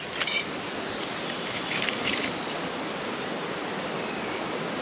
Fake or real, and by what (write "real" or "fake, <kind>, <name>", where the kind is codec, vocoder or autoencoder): real